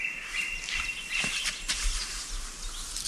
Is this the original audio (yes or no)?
yes